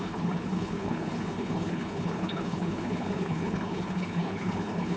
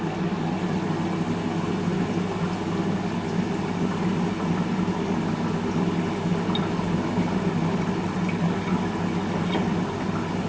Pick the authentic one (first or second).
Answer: second